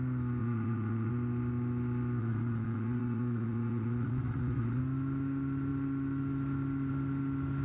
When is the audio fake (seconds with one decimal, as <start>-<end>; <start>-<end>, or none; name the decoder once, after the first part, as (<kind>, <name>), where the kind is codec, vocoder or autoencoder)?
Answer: 0.4-1.1 (vocoder, Vocos); 2.2-4.8